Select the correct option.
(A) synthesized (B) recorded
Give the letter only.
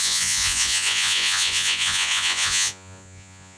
A